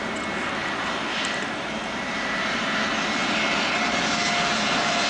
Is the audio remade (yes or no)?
no